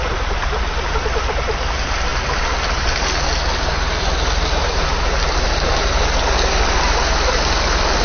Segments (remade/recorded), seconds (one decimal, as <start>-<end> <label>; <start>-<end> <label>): 0.0-8.0 recorded

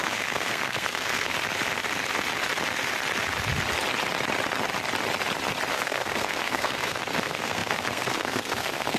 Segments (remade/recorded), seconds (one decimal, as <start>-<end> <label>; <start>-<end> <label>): 0.0-1.3 remade; 1.3-5.7 recorded; 5.7-9.0 remade